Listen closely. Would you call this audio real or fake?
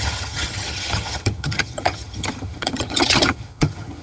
fake